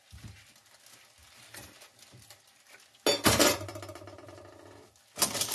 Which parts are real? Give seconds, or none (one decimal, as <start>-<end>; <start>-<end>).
0.0-5.5